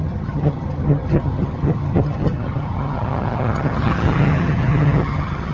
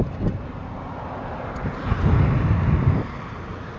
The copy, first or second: first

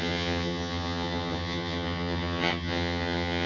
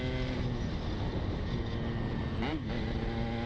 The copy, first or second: first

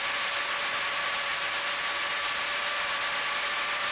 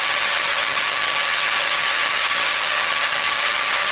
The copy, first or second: second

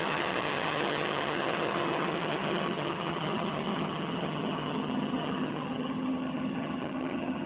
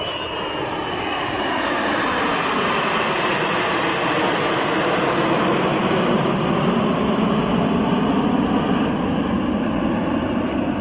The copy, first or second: first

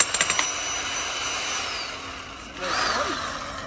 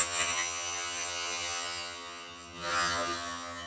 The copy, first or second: second